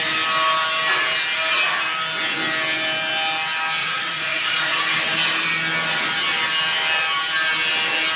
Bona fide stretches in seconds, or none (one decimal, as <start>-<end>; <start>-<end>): 0.0-3.8; 4.8-8.2

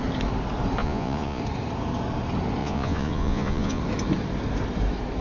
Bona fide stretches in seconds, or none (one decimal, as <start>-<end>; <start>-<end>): 0.0-0.8; 1.4-2.6; 3.8-5.2

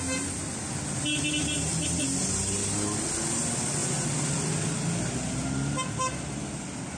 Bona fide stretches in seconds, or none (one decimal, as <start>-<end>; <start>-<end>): 0.0-7.0

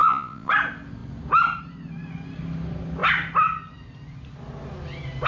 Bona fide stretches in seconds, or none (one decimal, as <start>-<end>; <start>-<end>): 0.5-5.3

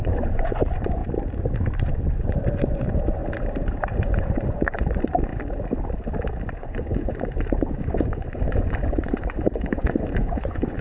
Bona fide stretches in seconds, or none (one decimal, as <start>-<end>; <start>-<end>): 1.0-1.8; 3.2-4.0; 5.3-6.5